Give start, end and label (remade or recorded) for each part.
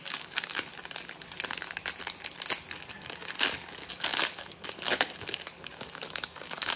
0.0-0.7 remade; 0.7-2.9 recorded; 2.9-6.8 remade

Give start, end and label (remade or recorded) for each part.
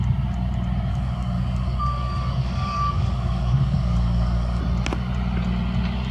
0.0-0.9 recorded; 0.9-4.6 remade; 4.6-6.1 recorded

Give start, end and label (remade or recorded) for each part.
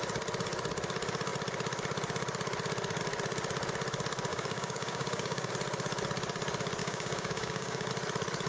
0.0-4.3 recorded; 4.3-5.5 remade; 5.5-6.8 recorded; 6.8-7.9 remade; 7.9-8.5 recorded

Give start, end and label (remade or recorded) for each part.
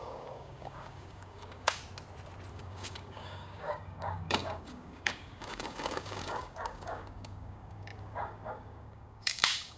0.0-1.8 remade; 1.8-2.5 recorded; 2.5-9.8 remade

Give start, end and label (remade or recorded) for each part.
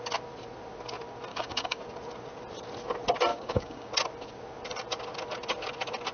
0.0-1.3 recorded; 1.3-1.8 remade; 1.8-3.3 recorded; 3.3-3.9 remade; 3.9-6.1 recorded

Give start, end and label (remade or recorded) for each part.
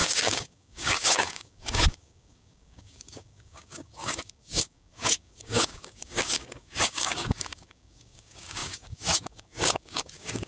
0.0-10.5 remade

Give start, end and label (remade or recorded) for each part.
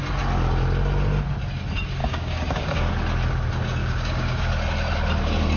0.0-2.0 recorded; 2.0-2.9 remade; 2.9-3.8 recorded; 3.8-4.5 remade; 4.5-5.6 recorded